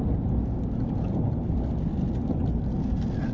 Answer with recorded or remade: recorded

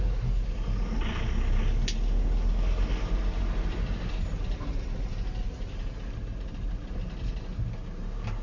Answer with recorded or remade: recorded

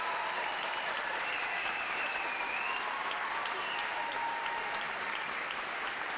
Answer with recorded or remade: remade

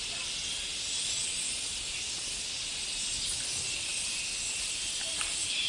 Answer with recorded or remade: recorded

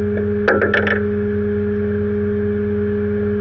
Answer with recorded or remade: recorded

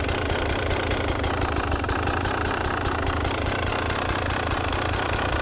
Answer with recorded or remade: remade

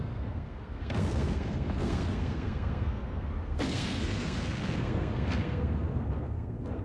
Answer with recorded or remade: remade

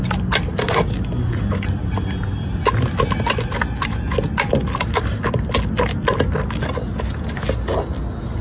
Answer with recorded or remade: recorded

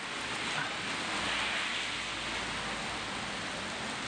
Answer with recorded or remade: recorded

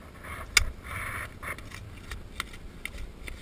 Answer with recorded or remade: recorded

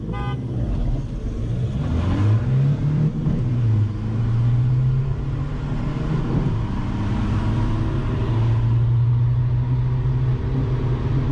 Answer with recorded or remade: recorded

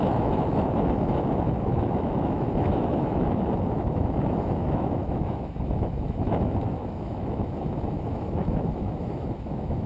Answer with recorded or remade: remade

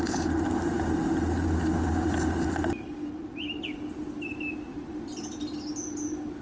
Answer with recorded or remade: recorded